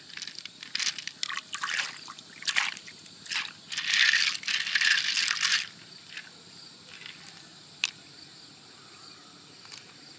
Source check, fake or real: real